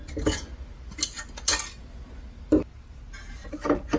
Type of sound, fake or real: real